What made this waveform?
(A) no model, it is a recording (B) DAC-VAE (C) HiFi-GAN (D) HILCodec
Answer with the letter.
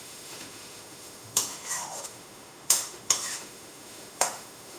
B